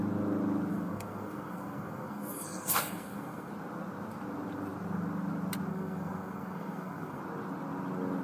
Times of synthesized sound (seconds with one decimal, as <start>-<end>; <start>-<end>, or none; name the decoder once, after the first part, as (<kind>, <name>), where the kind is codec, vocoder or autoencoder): 0.7-3.5 (codec, SNAC); 5.7-7.2